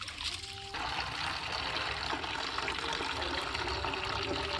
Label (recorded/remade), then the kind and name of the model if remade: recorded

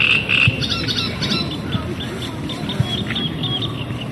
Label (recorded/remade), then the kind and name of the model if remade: recorded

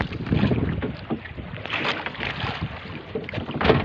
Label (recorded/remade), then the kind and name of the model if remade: recorded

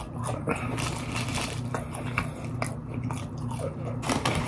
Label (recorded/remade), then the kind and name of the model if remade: recorded